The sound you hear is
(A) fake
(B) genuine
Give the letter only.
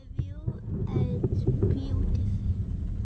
B